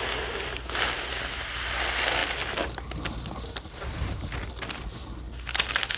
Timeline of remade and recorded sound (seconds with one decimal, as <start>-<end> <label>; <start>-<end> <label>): 0.0-6.0 recorded